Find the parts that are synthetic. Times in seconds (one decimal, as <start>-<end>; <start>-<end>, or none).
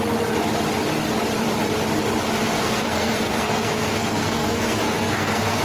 2.6-5.6